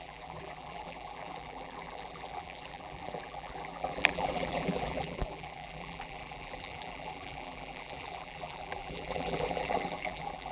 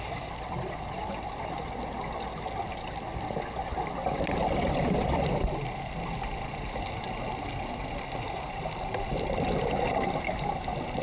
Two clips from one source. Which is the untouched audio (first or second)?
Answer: second